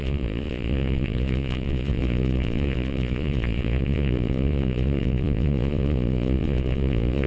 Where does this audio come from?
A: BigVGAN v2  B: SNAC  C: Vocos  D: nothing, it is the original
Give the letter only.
C